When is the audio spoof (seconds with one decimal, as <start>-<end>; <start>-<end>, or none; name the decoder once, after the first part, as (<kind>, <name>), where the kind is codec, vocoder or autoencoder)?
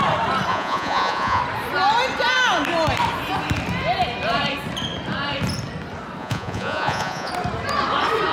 0.5-1.4 (vocoder, Vocos); 6.2-7.3